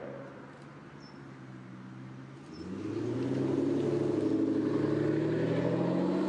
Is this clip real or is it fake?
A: real